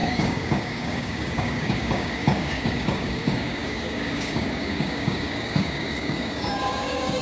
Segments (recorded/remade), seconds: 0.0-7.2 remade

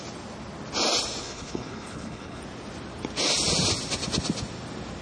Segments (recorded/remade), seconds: 0.0-1.2 recorded; 1.2-2.4 remade; 2.4-5.0 recorded